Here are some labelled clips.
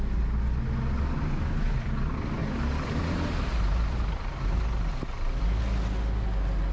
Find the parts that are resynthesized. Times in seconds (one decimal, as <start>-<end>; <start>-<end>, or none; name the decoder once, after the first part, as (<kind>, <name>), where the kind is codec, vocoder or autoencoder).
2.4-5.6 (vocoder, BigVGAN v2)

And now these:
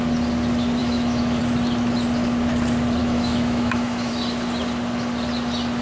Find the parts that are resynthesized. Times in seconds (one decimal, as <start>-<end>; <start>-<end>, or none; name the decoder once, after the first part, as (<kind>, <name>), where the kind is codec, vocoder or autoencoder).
0.8-1.4 (autoencoder, DAC-VAE); 3.0-4.1

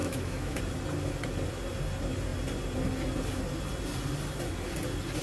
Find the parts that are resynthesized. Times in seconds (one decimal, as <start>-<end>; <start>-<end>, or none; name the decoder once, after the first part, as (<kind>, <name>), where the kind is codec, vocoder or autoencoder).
0.0-0.6 (autoencoder, DAC-VAE)